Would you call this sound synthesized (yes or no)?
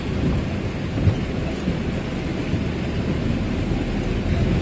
no